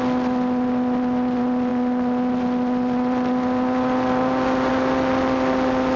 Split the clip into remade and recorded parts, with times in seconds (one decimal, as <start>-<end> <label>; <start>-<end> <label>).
0.0-6.0 recorded